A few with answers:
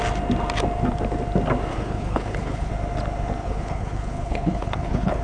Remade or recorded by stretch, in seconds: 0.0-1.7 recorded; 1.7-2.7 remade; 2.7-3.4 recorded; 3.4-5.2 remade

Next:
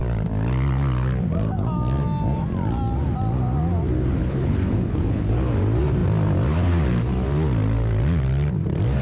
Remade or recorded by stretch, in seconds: 0.0-4.2 recorded; 4.2-5.3 remade; 5.3-9.0 recorded

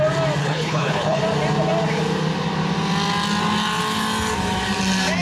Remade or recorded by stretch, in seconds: 0.0-0.4 recorded; 0.4-1.2 remade; 1.2-5.2 recorded

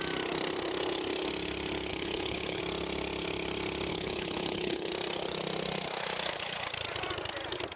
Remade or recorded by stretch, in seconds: 0.0-1.9 recorded; 1.9-2.6 remade; 2.6-3.9 recorded; 3.9-4.9 remade; 4.9-7.8 recorded

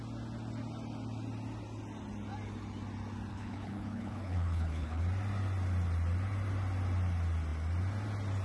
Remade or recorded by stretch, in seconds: 0.0-3.3 recorded; 3.3-5.0 remade; 5.0-8.4 recorded

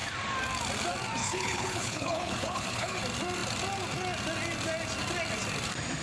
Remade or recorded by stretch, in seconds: 0.0-1.2 recorded; 1.2-3.0 remade; 3.0-6.0 recorded

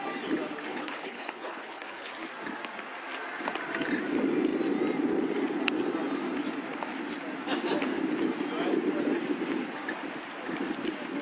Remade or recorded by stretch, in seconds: 0.0-0.7 recorded; 0.7-2.1 remade; 2.1-11.2 recorded